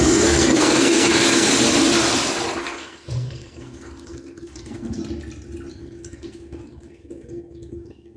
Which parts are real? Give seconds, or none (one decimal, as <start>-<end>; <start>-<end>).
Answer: 1.5-2.6; 5.0-5.7